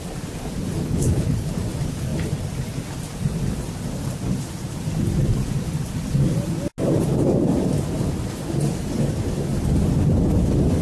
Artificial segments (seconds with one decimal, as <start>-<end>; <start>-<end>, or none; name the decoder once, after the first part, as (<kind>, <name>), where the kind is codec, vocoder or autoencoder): 0.8-1.5 (codec, HILCodec)